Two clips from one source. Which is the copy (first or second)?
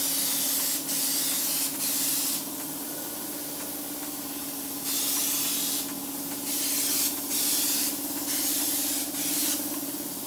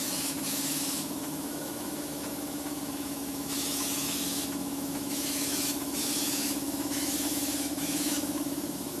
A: second